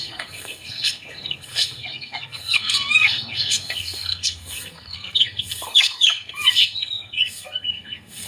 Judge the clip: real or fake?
fake